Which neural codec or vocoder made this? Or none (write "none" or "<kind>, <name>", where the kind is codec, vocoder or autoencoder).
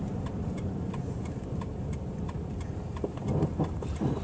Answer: vocoder, BigVGAN v2